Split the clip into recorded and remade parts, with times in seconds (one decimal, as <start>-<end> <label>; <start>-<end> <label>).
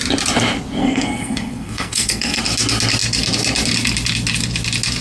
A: 0.0-0.8 recorded; 0.8-2.4 remade; 2.4-5.0 recorded